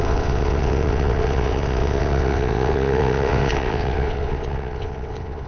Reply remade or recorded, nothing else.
remade